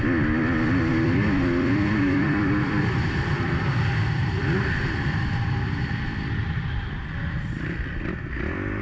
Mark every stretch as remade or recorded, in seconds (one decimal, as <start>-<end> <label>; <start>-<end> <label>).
0.0-0.9 recorded; 0.9-3.9 remade; 3.9-7.2 recorded; 7.2-8.1 remade; 8.1-8.8 recorded